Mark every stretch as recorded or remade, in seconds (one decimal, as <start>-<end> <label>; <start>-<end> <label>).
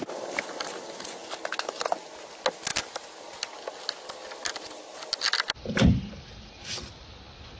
0.0-7.6 recorded